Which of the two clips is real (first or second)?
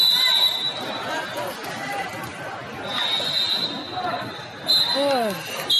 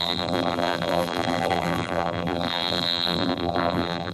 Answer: first